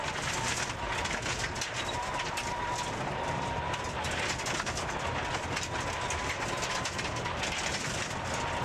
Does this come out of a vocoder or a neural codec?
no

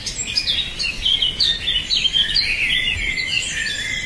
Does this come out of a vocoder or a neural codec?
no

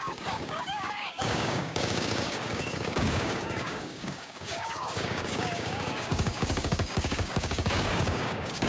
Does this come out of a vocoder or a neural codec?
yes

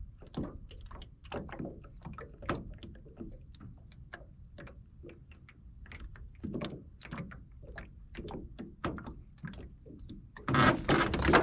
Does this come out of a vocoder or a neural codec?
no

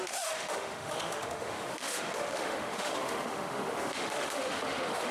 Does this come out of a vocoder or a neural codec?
yes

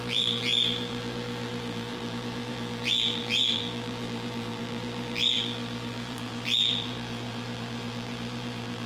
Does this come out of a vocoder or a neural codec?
yes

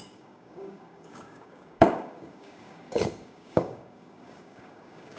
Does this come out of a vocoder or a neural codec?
yes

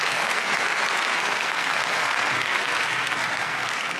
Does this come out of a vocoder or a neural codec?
yes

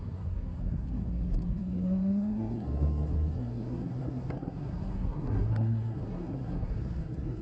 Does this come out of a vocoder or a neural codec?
yes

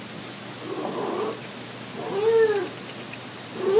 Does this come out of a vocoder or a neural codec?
no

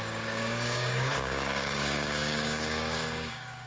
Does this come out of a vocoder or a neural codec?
yes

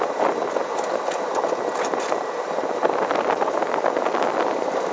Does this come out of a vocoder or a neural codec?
no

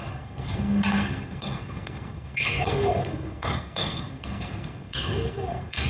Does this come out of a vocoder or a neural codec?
yes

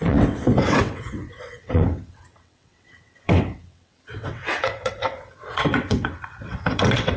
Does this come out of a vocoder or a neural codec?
yes